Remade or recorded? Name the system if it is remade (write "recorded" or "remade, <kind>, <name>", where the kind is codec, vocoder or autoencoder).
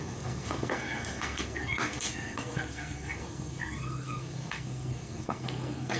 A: remade, codec, SNAC